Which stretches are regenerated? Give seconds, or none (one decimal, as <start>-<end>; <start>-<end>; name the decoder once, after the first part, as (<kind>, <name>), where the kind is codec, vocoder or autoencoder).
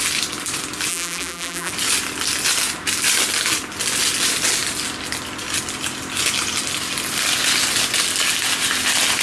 0.9-1.7 (vocoder, BigVGAN v2)